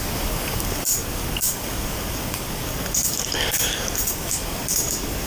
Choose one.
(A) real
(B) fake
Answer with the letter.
B